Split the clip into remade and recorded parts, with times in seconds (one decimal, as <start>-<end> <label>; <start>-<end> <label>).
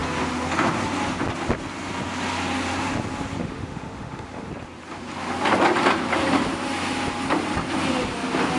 0.0-3.4 recorded; 3.4-4.5 remade; 4.5-8.6 recorded